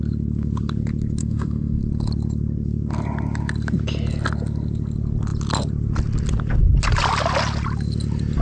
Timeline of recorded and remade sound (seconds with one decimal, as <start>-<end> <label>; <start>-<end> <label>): 0.0-1.2 recorded; 1.2-1.8 remade; 1.8-8.4 recorded